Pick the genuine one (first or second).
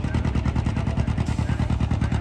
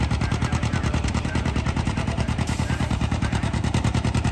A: first